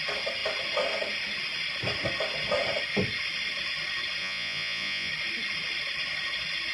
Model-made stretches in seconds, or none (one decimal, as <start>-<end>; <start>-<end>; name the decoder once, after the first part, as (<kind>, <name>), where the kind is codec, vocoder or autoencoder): 4.2-5.1 (vocoder, Vocos)